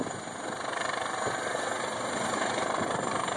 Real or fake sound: real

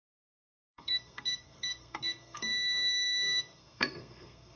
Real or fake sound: fake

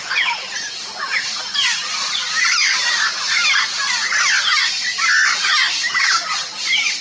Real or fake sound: real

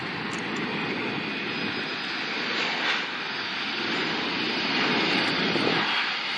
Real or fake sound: real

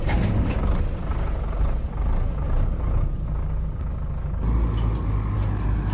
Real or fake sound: real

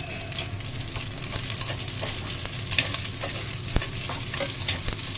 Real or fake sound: real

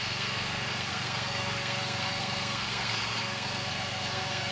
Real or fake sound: fake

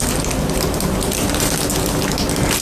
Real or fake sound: real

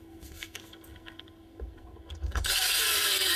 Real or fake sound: fake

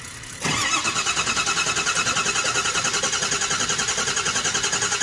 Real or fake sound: real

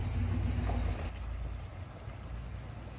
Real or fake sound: real